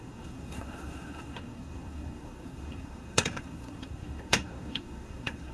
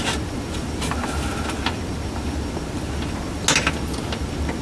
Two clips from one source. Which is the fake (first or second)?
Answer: first